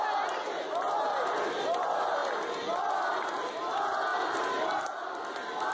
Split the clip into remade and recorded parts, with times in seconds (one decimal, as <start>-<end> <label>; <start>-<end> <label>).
0.0-5.7 recorded